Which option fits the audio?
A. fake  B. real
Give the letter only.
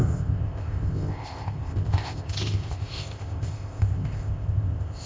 A